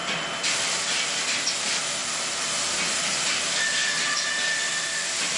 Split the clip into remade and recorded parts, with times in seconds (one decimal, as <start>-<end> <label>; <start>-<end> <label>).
0.0-3.8 remade; 3.8-4.6 recorded; 4.6-5.4 remade